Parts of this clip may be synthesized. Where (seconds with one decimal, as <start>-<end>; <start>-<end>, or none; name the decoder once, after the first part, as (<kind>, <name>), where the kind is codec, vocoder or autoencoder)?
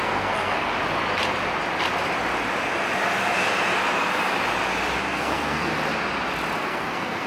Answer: 0.0-0.7 (codec, SNAC); 5.0-5.7; 6.6-7.3